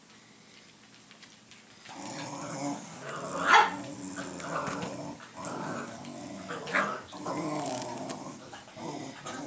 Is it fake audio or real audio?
real